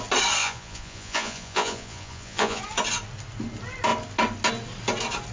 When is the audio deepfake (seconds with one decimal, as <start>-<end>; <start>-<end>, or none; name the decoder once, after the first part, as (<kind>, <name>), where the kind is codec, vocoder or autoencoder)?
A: 0.4-2.6 (vocoder, Vocos)

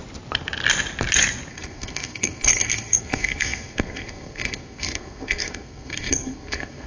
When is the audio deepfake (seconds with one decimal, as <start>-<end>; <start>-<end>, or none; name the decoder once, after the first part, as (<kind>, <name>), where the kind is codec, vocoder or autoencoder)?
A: 1.5-6.9 (codec, SNAC)

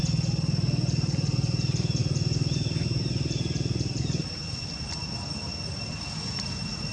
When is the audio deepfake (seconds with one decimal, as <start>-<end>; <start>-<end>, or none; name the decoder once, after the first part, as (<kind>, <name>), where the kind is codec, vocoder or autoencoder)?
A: none

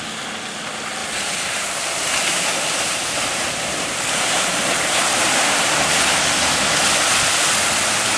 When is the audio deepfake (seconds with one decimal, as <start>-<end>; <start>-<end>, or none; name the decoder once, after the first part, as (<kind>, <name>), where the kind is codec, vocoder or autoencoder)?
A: 1.0-5.9 (vocoder, BigVGAN v2)

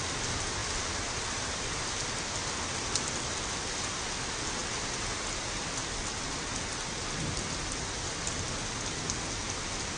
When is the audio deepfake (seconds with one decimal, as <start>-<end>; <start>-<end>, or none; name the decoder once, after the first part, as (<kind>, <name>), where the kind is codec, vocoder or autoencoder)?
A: none

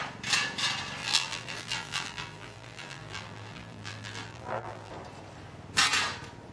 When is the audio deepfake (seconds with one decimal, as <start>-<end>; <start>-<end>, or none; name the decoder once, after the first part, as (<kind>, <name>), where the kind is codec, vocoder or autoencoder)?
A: 1.0-4.9 (vocoder, BigVGAN v2)

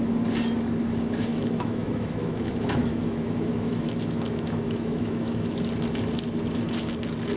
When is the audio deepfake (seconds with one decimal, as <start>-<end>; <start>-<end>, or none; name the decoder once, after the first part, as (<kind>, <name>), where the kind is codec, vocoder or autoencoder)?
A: 1.3-5.7 (autoencoder, DAC-VAE)

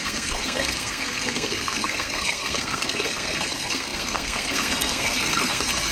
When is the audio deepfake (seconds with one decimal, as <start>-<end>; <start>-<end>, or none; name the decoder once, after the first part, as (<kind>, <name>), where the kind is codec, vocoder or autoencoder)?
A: 0.0-5.9 (codec, SNAC)